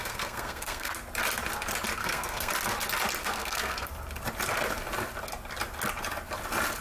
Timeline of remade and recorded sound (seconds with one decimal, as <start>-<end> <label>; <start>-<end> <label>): 0.0-0.9 remade; 0.9-2.0 recorded; 2.0-2.5 remade; 2.5-3.2 recorded; 3.2-3.9 remade; 3.9-6.8 recorded